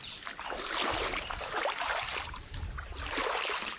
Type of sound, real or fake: real